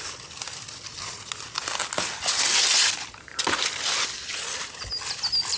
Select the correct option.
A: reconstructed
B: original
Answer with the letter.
B